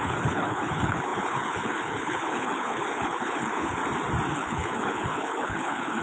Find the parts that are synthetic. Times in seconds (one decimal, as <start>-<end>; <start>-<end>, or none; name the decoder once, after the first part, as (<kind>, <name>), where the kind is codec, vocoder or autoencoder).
0.0-3.8 (codec, HILCodec); 4.3-6.0